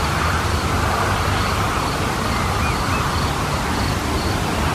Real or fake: real